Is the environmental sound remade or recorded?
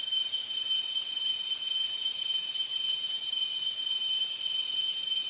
remade